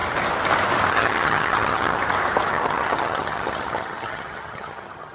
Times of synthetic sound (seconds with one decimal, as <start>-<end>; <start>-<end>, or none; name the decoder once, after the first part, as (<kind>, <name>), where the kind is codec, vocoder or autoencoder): 0.9-2.0 (vocoder, HiFi-GAN); 2.5-5.1